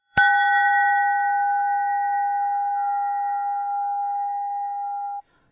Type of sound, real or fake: fake